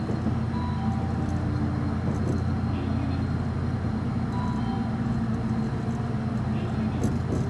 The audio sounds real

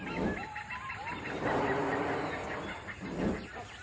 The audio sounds real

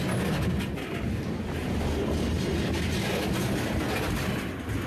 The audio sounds real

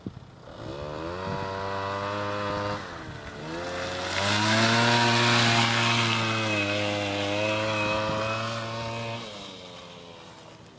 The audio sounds real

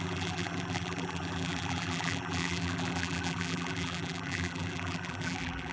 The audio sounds fake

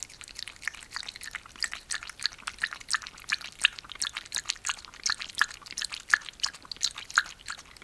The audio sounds real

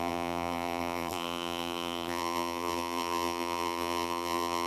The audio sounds fake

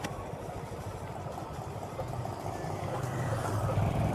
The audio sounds fake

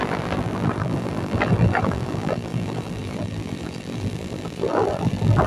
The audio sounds fake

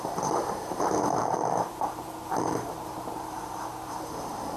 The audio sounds fake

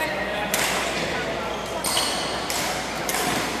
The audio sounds real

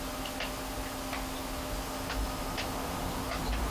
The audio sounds real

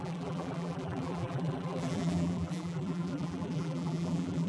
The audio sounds fake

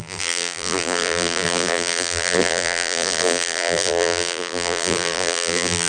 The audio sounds fake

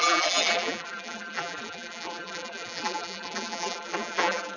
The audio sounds fake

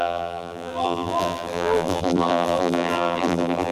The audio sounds fake